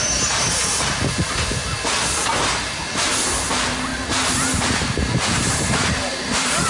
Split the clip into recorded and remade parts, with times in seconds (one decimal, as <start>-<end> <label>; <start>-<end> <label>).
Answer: 0.0-1.6 remade; 1.6-2.5 recorded; 2.5-3.9 remade; 3.9-4.6 recorded; 4.6-6.7 remade